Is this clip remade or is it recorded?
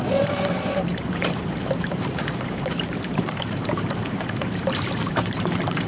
remade